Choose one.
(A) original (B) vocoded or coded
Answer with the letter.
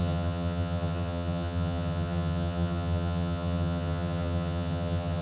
B